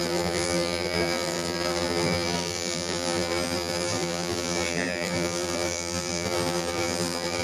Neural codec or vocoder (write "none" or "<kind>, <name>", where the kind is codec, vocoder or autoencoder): vocoder, BigVGAN v2